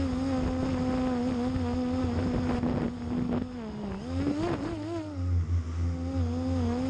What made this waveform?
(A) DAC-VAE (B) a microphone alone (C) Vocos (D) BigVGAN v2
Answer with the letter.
B